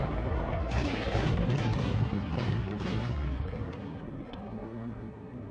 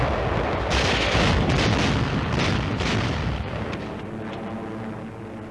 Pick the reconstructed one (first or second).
first